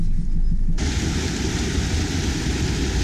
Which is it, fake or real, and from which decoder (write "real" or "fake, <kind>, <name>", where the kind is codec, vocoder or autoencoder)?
real